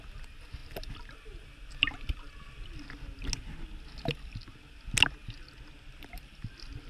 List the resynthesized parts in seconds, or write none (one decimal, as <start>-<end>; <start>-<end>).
none